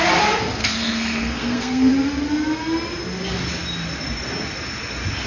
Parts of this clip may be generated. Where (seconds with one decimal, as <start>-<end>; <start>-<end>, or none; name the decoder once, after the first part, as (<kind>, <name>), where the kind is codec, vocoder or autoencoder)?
0.6-1.9 (codec, SNAC)